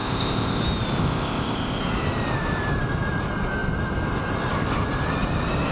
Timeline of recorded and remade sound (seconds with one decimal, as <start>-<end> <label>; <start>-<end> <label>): 0.0-0.6 remade; 0.6-1.0 recorded; 1.0-1.8 remade; 1.8-5.7 recorded